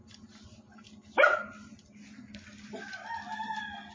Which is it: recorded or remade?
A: recorded